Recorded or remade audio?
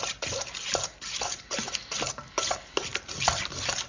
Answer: recorded